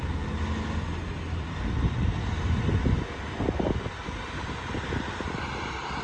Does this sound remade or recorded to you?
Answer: recorded